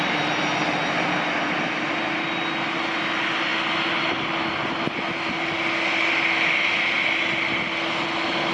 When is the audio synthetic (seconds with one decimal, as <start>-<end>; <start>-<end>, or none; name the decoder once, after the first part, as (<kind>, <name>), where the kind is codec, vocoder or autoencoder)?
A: none